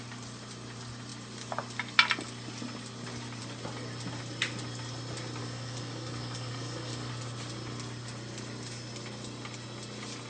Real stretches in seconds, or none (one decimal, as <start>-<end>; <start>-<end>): 0.0-5.4; 7.1-10.3